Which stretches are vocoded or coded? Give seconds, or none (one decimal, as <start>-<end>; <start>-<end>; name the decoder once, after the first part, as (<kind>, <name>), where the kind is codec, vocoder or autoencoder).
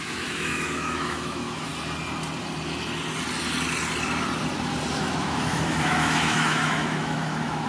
0.0-1.7 (autoencoder, DAC-VAE); 4.9-7.7